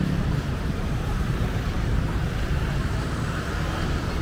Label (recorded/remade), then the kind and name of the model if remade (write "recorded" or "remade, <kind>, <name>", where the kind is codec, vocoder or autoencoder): remade, vocoder, BigVGAN v2